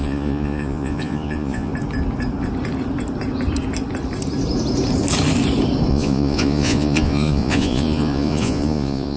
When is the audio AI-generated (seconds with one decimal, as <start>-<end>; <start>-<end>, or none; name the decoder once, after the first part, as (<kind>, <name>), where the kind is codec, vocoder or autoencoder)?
0.0-1.7 (vocoder, Vocos); 5.9-9.2